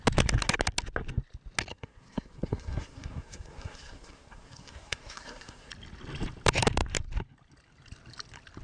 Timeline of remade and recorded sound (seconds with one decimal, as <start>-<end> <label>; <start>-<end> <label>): 0.0-1.7 recorded; 1.7-5.7 remade; 5.7-8.6 recorded